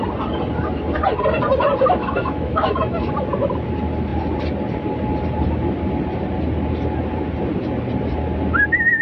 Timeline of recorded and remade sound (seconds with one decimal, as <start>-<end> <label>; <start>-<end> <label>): 0.0-2.0 recorded; 2.0-3.1 remade; 3.1-9.0 recorded